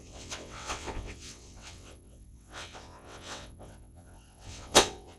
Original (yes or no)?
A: no